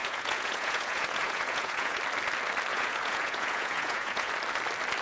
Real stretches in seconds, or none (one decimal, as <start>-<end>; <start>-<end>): 2.0-2.7; 4.3-5.0